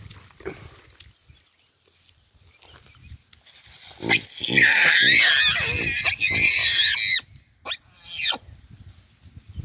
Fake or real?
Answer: real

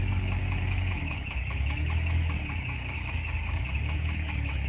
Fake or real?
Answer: fake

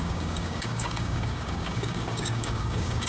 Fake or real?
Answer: fake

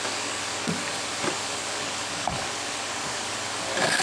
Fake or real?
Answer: fake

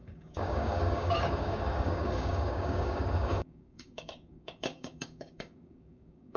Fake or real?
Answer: fake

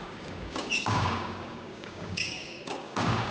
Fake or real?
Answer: fake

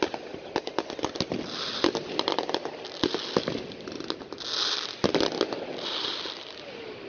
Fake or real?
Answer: real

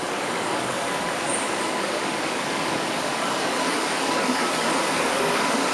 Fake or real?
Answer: fake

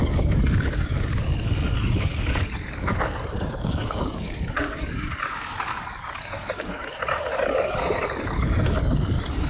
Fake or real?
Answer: fake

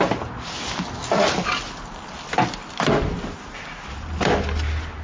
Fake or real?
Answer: real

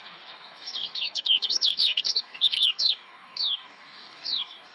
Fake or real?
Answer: fake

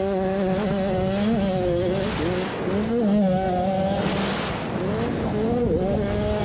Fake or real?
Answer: real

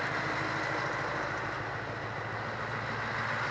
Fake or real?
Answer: real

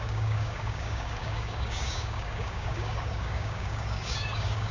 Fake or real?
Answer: fake